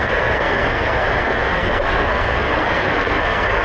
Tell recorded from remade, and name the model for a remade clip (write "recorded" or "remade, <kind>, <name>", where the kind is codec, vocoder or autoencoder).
remade, codec, SNAC